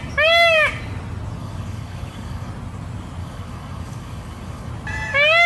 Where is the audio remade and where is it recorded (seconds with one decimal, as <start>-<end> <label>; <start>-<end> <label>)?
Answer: 0.0-1.4 recorded; 1.4-2.5 remade; 2.5-3.2 recorded; 3.2-4.7 remade; 4.7-5.5 recorded